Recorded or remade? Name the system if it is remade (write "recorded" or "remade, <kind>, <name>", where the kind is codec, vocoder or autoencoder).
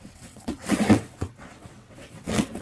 remade, vocoder, WaveNeXt